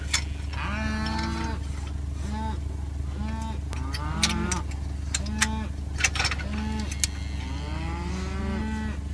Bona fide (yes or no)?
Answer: yes